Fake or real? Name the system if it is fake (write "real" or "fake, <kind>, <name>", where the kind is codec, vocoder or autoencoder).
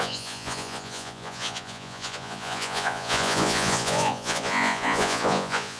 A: fake, vocoder, Vocos